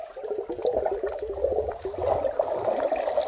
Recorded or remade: remade